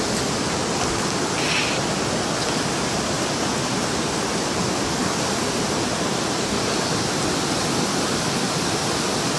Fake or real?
real